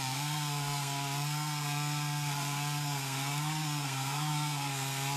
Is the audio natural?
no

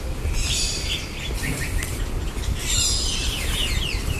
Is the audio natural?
yes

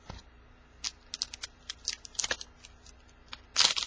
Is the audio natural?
yes